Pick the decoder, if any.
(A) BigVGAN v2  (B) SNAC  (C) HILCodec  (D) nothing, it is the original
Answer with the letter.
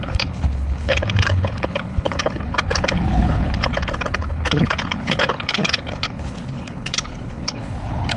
C